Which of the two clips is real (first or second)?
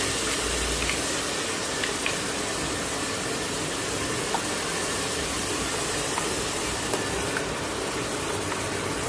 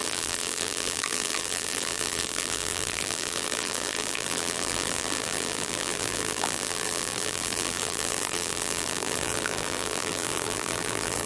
first